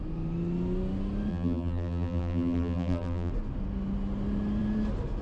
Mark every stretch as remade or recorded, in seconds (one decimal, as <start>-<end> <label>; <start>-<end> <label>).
0.0-1.3 recorded; 1.3-3.3 remade; 3.3-5.2 recorded